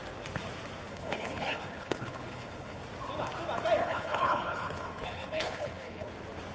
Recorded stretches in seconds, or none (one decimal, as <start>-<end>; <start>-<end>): 0.0-0.9; 2.8-3.8; 6.1-6.5